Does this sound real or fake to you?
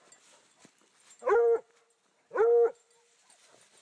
real